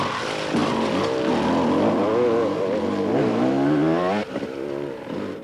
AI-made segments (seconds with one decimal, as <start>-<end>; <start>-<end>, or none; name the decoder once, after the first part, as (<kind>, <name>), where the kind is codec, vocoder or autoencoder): none